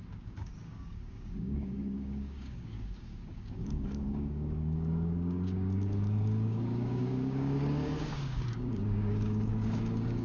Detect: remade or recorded remade